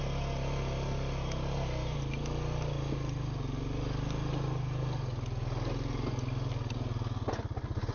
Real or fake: real